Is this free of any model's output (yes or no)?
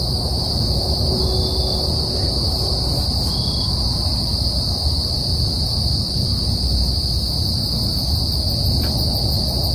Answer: yes